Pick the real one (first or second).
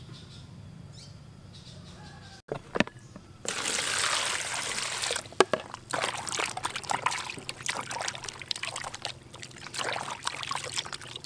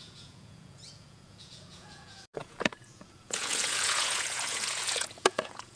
first